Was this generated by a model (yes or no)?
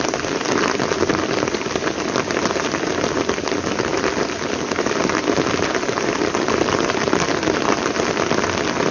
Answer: no